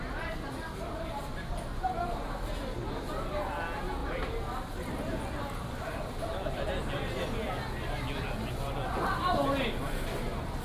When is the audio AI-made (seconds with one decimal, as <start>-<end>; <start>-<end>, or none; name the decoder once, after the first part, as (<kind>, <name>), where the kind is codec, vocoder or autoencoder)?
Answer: none